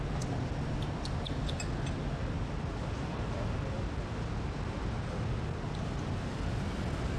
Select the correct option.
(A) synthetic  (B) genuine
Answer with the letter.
B